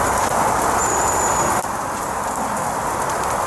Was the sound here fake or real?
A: real